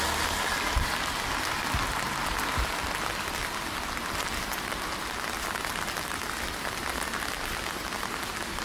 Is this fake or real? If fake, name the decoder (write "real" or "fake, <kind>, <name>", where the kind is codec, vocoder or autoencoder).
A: real